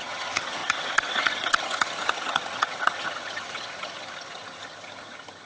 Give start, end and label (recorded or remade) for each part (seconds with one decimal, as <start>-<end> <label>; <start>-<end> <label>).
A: 0.0-5.5 remade